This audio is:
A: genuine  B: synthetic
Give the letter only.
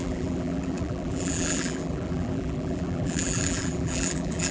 B